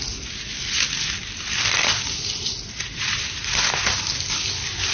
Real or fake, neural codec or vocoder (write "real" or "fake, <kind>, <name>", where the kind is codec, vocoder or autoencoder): real